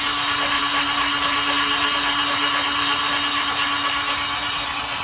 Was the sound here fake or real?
real